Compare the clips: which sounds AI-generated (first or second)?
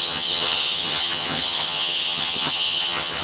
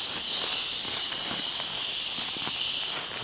first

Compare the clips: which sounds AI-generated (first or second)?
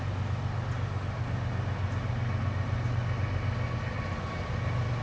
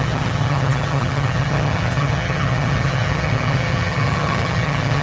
second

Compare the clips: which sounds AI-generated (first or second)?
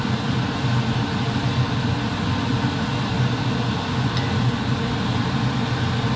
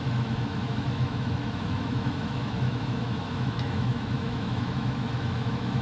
second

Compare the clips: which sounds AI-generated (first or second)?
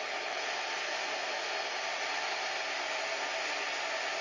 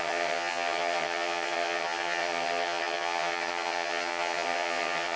second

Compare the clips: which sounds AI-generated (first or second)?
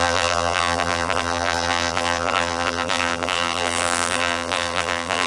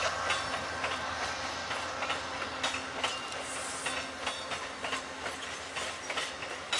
first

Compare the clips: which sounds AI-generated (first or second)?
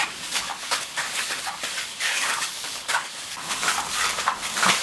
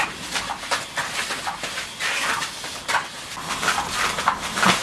first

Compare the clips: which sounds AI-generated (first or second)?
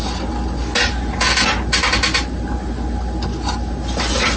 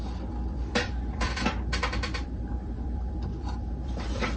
second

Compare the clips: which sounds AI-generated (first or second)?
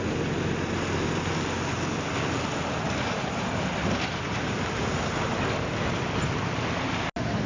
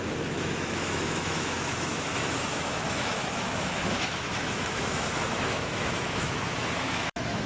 second